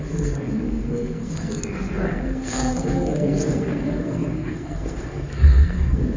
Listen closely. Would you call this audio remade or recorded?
remade